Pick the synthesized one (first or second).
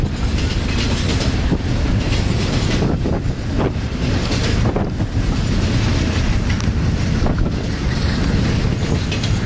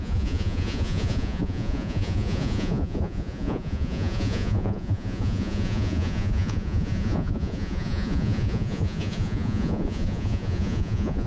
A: second